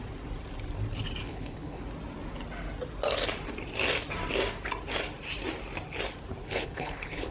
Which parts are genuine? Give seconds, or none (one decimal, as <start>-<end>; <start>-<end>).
0.0-1.2; 1.8-6.4